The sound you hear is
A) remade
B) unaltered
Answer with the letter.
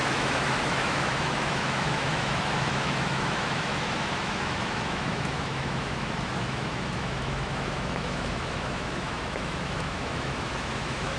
A